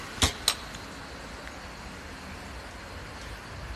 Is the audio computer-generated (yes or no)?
no